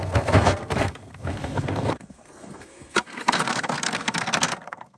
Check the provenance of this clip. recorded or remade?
remade